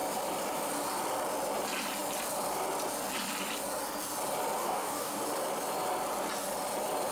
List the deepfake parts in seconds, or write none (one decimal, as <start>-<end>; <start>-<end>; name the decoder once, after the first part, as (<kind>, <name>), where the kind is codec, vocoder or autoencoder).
4.6-5.2 (codec, DAC)